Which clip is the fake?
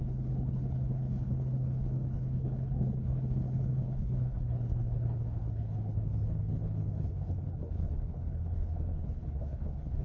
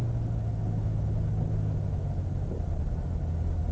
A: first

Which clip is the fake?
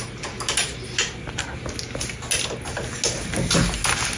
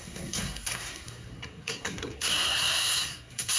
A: second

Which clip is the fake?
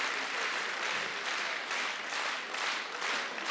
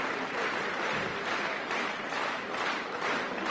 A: second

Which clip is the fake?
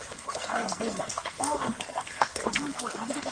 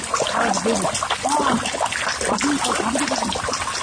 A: first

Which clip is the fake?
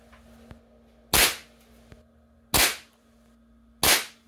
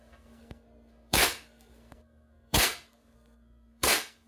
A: second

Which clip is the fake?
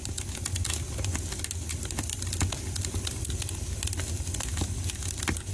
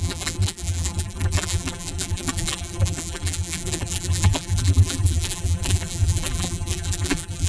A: second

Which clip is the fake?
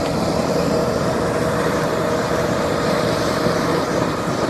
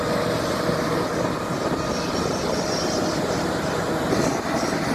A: first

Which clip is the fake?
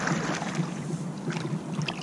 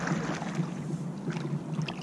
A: first